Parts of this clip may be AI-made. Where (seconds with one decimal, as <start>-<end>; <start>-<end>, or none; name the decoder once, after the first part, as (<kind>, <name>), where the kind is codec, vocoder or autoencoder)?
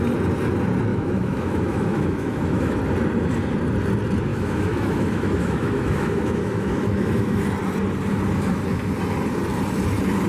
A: 0.9-2.8 (autoencoder, DAC-VAE); 4.3-7.4